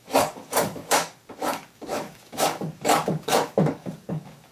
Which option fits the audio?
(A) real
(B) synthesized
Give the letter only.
B